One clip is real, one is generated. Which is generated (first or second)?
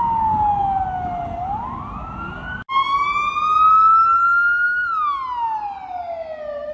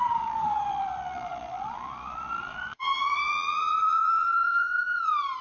second